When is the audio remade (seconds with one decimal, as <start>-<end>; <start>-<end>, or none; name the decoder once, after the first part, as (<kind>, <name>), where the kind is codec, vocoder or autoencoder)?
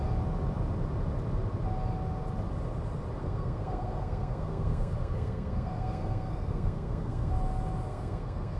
3.2-7.3 (codec, SNAC); 7.9-8.6